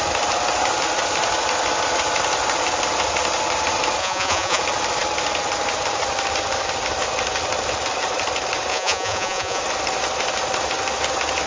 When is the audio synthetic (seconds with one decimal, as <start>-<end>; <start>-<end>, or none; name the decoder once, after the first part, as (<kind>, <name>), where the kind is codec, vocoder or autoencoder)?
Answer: 4.0-4.6 (vocoder, Vocos); 8.7-9.6